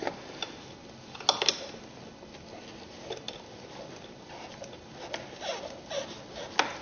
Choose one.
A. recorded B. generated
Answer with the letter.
A